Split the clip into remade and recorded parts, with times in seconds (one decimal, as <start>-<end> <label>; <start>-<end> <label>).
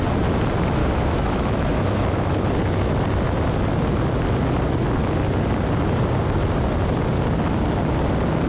0.0-0.8 recorded; 0.8-2.3 remade; 2.3-8.5 recorded